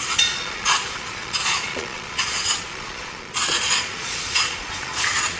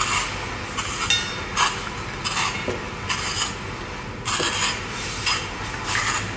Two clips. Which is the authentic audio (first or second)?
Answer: second